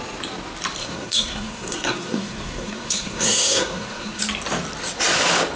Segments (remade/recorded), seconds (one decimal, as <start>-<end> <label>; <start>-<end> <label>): 0.0-0.8 recorded; 0.8-4.2 remade; 4.2-5.6 recorded